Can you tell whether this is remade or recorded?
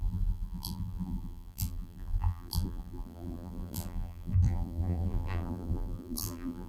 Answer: remade